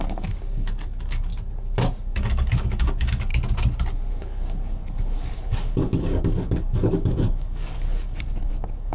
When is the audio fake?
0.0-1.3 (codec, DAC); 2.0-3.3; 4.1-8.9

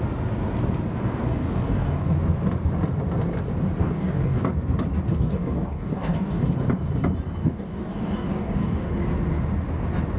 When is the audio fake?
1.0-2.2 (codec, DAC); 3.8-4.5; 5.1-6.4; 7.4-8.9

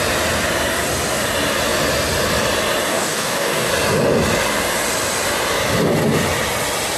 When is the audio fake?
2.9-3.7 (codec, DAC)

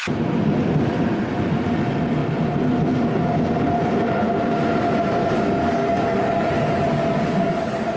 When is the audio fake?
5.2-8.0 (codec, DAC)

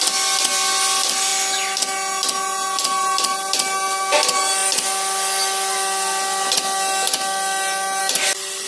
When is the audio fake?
none

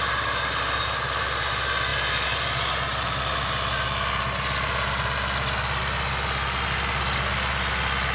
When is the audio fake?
none

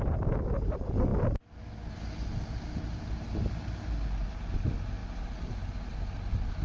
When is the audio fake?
none